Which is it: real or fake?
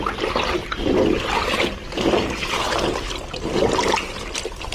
real